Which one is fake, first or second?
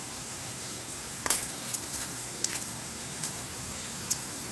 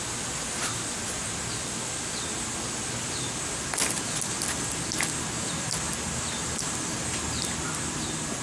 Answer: first